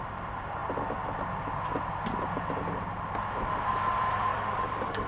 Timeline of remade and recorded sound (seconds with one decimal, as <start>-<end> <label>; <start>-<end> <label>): 0.0-4.3 recorded; 4.3-5.1 remade